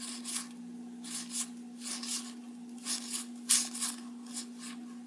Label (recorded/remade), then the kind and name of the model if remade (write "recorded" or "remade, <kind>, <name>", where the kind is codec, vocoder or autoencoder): recorded